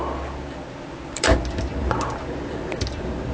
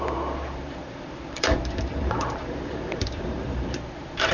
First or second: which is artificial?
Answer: second